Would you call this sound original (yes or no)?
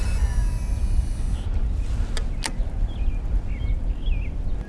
yes